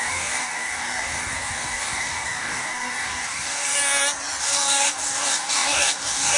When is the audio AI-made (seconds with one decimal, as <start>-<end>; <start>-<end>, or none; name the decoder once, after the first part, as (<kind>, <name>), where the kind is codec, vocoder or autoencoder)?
0.0-3.8 (codec, DAC); 4.4-6.4